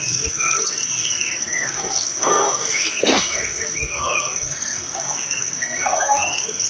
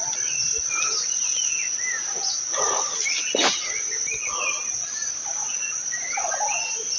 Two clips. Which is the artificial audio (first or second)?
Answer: first